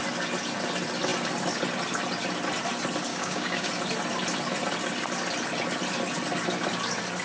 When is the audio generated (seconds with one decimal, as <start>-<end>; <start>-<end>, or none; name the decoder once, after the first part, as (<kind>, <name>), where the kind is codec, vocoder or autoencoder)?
3.1-3.7 (codec, DAC)